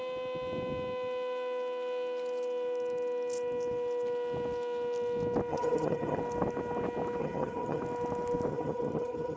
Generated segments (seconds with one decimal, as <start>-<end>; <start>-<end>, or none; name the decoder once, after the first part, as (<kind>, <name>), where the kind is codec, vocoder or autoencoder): 5.5-6.2 (vocoder, HiFi-GAN); 7.2-7.8; 8.5-9.4